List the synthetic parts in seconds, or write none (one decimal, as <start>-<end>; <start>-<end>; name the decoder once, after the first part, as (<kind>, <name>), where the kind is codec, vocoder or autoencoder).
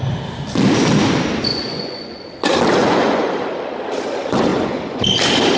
1.5-2.3 (vocoder, Vocos); 2.8-3.3; 4.5-5.0